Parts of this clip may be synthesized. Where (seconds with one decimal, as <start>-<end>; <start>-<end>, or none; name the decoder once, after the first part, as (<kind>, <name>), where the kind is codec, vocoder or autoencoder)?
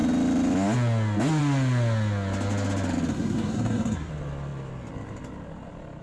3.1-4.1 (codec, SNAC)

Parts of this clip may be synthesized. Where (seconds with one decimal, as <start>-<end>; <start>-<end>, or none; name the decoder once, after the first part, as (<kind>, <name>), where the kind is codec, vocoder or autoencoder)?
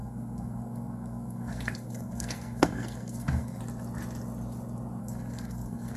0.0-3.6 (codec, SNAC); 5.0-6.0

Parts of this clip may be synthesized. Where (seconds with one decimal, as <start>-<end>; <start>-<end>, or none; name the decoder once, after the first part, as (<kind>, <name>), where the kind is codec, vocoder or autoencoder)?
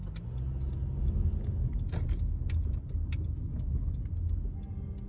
none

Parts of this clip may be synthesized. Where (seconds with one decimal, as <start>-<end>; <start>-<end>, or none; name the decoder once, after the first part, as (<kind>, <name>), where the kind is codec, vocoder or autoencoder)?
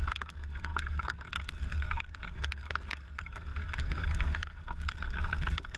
0.0-5.8 (codec, SNAC)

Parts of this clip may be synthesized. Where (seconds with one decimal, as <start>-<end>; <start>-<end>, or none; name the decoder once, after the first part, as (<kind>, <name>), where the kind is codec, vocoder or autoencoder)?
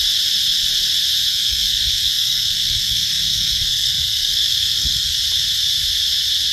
1.3-5.2 (codec, SNAC)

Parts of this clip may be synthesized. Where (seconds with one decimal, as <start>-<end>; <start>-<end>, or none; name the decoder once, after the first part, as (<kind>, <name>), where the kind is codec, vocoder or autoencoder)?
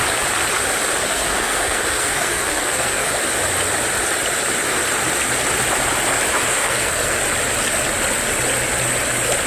1.0-3.1 (codec, SNAC); 6.5-7.2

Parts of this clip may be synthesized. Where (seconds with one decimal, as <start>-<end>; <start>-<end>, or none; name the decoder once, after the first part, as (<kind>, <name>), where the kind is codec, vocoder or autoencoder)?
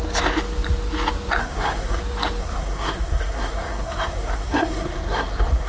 1.4-2.0 (codec, SNAC); 2.4-5.7